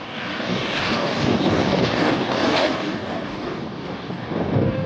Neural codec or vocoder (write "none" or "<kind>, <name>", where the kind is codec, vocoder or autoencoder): codec, DAC